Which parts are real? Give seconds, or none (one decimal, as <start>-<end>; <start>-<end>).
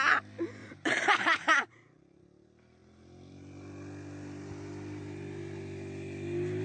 0.0-0.6; 2.2-6.6